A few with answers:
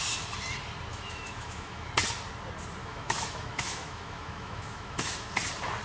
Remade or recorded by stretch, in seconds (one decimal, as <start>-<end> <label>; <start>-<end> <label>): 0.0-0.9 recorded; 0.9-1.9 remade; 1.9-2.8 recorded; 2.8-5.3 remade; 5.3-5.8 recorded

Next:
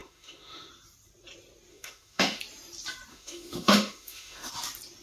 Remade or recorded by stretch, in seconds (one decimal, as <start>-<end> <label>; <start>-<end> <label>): 0.0-0.7 remade; 0.7-1.7 recorded; 1.7-2.4 remade; 2.4-3.1 recorded; 3.1-4.5 remade; 4.5-5.0 recorded

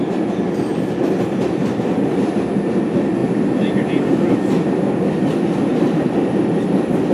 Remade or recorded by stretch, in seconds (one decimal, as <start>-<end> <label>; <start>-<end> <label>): 0.0-0.7 recorded; 0.7-2.2 remade; 2.2-5.7 recorded; 5.7-7.1 remade

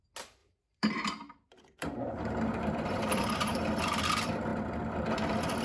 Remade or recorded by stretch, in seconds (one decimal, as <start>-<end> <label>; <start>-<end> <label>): 0.0-0.4 recorded; 0.4-3.8 remade; 3.8-5.6 recorded

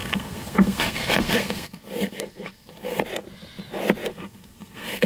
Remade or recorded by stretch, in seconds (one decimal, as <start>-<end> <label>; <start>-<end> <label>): 0.0-3.0 remade; 3.0-4.1 recorded; 4.1-5.1 remade